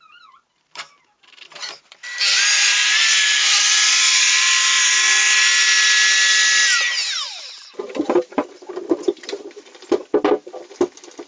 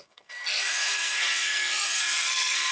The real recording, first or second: first